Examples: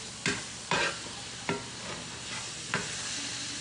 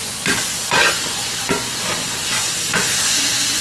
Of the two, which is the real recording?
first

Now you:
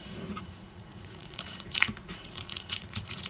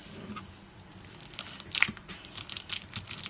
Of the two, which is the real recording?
second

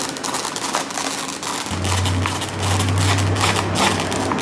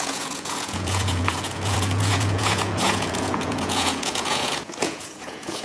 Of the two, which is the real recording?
first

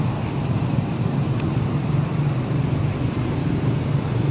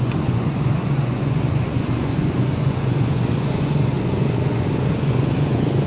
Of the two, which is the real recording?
first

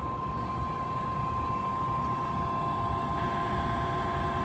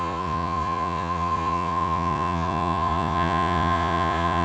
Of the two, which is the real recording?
first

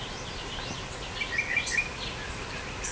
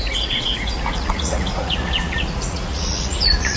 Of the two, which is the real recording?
first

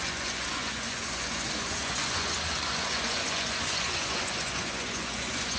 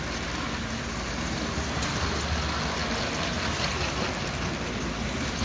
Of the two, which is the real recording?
second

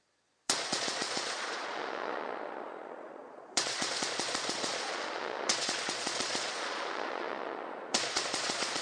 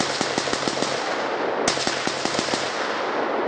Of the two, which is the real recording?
second